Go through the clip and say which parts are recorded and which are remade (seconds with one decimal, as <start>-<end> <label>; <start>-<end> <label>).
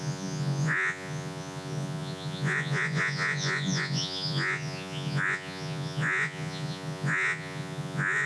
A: 0.0-8.3 remade